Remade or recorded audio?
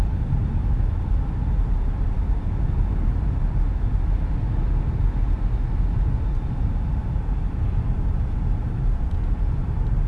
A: recorded